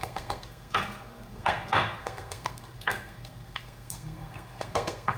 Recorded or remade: remade